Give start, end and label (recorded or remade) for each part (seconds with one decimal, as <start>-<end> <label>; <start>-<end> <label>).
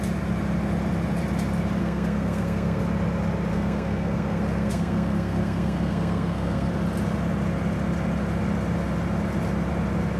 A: 0.0-1.8 recorded; 1.8-2.8 remade; 2.8-3.5 recorded; 3.5-6.7 remade; 6.7-10.2 recorded